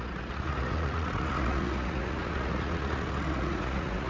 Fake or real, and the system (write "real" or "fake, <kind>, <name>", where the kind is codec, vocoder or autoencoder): fake, vocoder, Vocos